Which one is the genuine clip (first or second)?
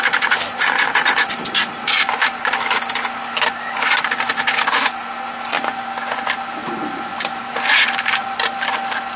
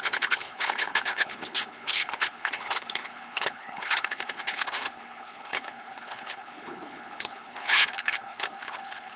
first